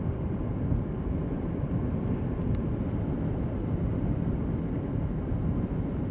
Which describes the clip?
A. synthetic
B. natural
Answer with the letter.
A